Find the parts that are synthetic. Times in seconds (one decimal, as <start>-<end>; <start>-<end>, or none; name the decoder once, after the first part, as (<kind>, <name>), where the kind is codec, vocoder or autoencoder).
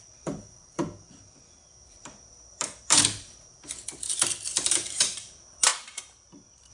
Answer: 2.0-3.7 (vocoder, BigVGAN v2); 4.5-5.0; 5.7-6.7